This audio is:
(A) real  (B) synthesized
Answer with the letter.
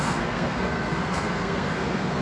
B